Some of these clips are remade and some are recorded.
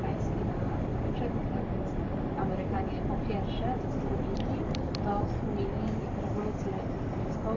recorded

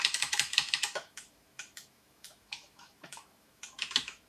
remade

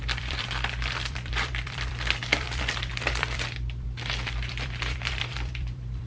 remade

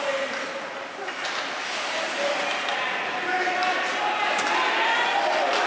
recorded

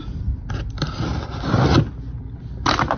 recorded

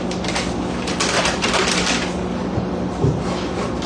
recorded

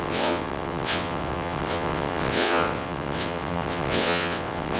remade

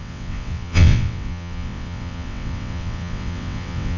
remade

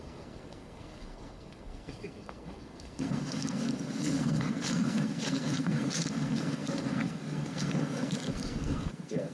remade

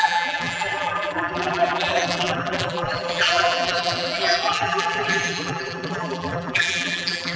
remade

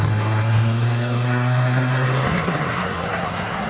remade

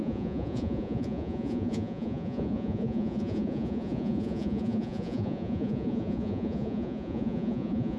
remade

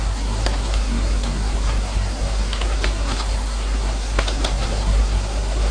remade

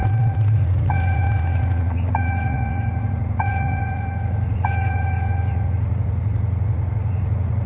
remade